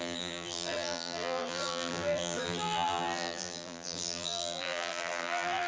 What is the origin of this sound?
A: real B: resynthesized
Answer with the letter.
B